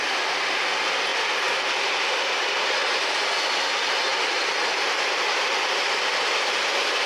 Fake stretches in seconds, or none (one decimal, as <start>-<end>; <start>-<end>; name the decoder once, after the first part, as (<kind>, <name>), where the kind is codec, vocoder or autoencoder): none